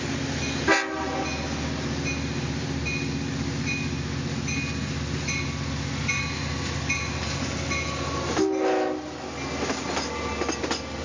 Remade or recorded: recorded